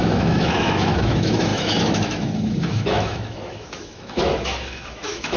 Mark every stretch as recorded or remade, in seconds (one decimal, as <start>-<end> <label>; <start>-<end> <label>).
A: 0.0-5.4 remade